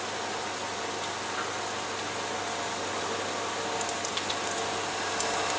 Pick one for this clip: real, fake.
real